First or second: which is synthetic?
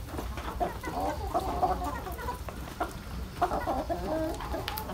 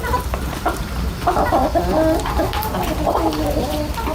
first